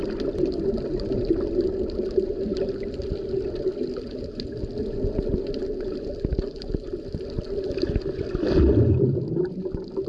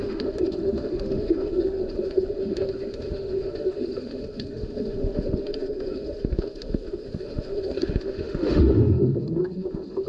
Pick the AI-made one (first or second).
second